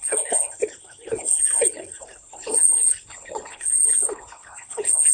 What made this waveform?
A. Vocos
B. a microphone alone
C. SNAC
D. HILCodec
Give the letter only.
D